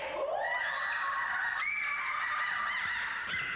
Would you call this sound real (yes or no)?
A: yes